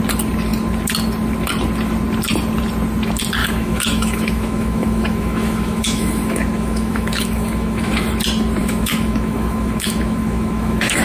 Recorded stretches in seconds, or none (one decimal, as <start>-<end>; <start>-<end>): 0.0-3.4; 8.1-8.6